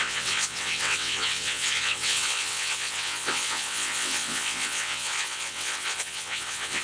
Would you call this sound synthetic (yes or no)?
yes